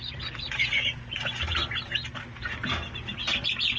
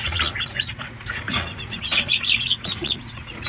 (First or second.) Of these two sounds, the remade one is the second